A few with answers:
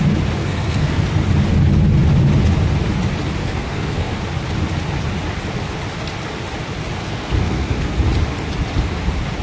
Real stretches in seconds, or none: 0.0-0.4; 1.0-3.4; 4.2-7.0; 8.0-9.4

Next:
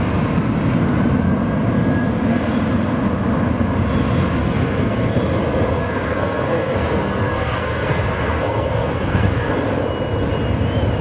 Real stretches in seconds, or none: 0.0-4.4; 5.2-5.8; 9.5-11.0